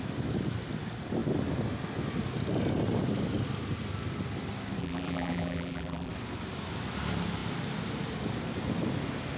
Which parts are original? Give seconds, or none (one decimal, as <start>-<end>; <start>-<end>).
0.0-4.8; 6.1-9.4